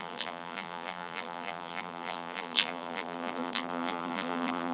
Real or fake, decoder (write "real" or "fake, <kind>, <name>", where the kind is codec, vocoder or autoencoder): fake, vocoder, BigVGAN v2